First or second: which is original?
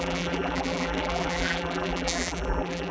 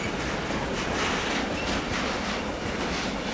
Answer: second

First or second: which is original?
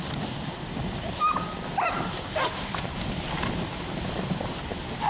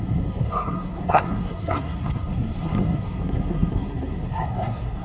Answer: first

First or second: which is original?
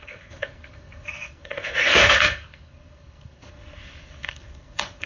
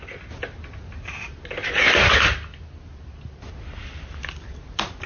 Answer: second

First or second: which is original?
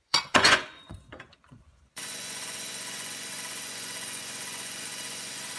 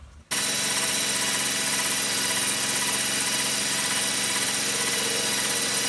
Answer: second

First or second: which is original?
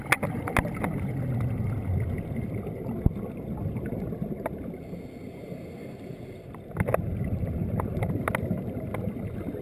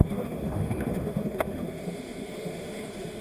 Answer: first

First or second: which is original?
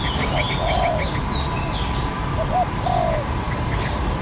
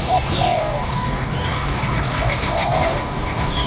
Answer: first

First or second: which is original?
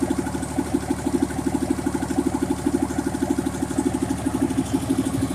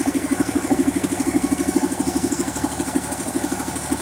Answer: first